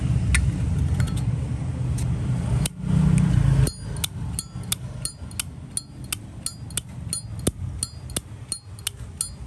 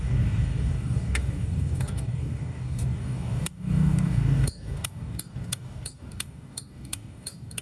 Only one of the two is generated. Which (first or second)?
second